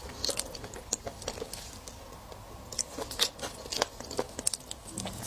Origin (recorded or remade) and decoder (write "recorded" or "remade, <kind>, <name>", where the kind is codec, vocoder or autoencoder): recorded